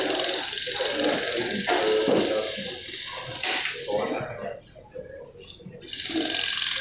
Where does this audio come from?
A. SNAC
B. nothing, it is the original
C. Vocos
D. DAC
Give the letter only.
B